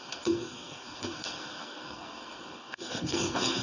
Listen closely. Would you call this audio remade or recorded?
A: remade